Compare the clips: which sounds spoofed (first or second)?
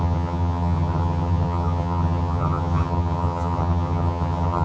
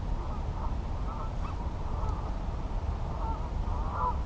first